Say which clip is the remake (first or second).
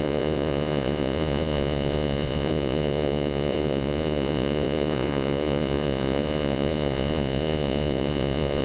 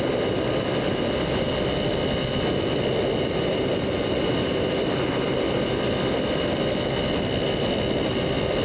first